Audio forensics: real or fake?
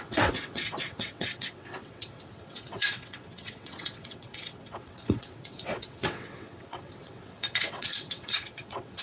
fake